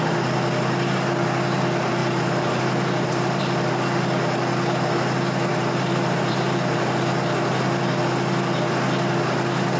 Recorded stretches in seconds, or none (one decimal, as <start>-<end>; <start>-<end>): 0.0-2.0; 3.4-5.5; 6.3-9.8

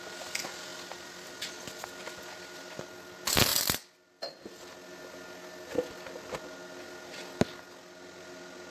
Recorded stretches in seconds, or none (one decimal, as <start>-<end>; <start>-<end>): 0.0-0.7; 1.5-8.7